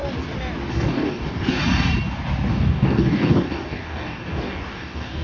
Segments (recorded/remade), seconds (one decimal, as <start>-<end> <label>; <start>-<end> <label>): 0.0-0.7 recorded; 0.7-1.6 remade; 1.6-2.5 recorded; 2.5-5.2 remade